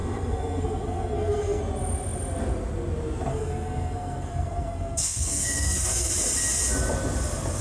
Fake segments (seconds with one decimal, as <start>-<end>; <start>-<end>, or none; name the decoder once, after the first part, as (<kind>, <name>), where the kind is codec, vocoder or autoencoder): 0.0-1.6 (codec, SNAC); 3.3-6.1